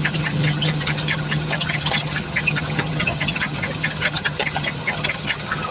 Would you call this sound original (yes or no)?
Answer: no